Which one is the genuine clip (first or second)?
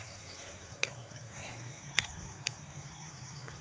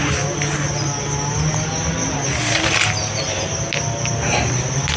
second